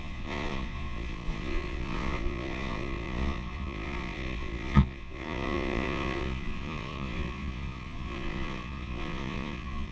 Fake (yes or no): yes